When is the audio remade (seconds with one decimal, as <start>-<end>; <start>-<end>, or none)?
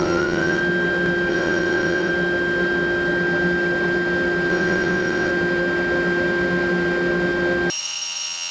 0.0-0.6; 1.3-2.1; 4.5-5.3; 7.8-8.5